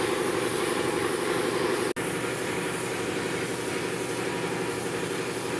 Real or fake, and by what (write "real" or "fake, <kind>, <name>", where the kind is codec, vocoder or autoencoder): real